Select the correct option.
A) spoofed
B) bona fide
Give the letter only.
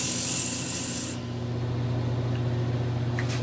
B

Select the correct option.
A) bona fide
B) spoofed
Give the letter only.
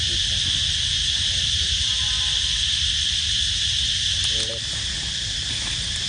A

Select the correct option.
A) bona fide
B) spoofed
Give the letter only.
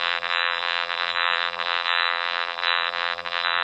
B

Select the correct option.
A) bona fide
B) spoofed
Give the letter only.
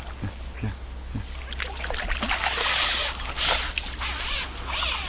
A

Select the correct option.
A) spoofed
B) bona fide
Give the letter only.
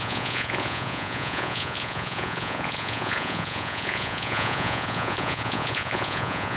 A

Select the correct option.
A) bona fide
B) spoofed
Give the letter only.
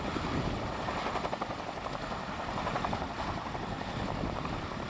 A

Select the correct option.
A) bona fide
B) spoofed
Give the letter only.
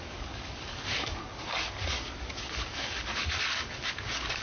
B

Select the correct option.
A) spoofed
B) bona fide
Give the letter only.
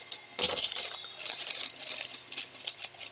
B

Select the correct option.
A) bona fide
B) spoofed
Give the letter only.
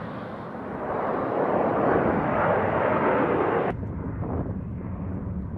A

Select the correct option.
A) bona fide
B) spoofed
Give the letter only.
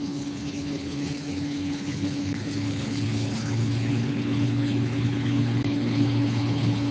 B